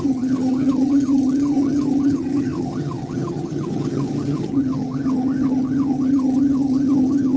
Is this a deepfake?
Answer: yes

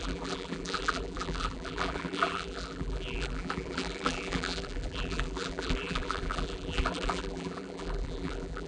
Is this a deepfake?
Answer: yes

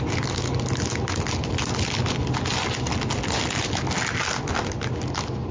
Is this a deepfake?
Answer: no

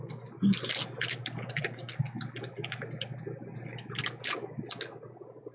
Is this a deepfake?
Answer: no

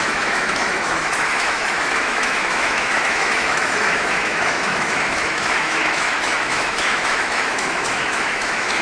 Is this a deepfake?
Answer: yes